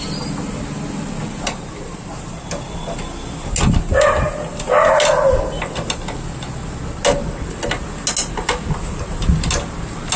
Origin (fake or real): real